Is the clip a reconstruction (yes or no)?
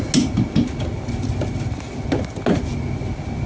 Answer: no